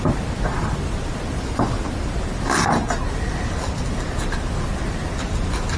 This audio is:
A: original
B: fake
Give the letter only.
A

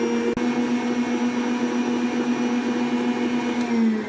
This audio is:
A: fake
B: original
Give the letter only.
B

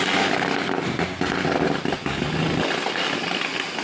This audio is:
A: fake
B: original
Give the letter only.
B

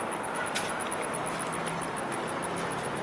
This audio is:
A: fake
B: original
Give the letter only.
B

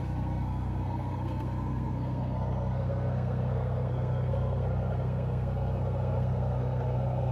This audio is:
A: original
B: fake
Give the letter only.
B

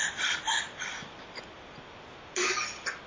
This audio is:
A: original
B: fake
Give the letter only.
A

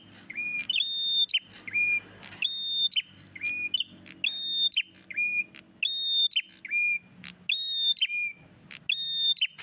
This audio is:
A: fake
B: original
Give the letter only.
B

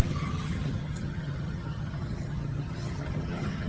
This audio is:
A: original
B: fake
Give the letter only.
B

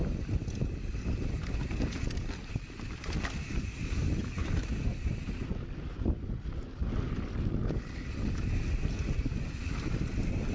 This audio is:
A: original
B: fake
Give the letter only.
A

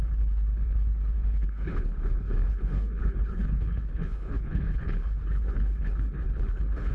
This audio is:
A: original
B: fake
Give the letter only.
B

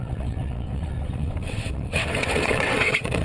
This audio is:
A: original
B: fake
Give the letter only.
B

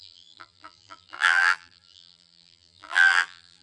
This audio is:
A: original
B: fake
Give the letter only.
B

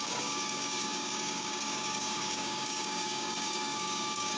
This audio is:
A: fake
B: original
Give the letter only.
A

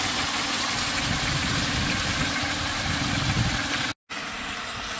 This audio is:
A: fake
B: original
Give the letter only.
B